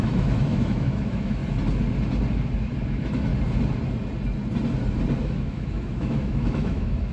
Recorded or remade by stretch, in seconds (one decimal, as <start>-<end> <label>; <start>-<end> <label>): 0.0-1.4 remade; 1.4-2.9 recorded; 2.9-3.3 remade; 3.3-5.2 recorded; 5.2-7.1 remade